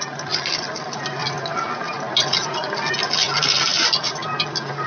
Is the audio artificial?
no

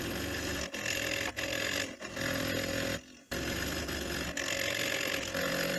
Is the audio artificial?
no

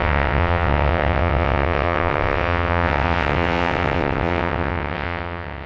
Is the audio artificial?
yes